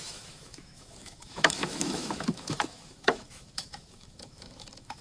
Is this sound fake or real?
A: fake